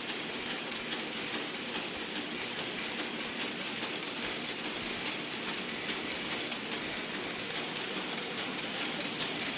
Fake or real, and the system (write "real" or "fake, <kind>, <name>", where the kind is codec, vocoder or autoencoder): real